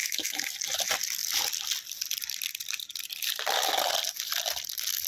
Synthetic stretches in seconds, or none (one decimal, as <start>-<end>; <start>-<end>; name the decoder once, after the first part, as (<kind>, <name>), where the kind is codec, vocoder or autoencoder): 0.0-0.5 (autoencoder, DAC-VAE)